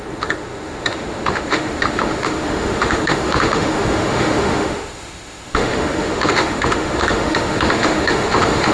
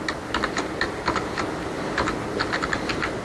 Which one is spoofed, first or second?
first